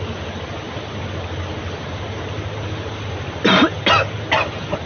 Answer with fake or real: real